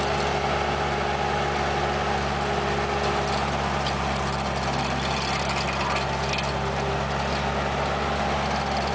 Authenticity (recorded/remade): recorded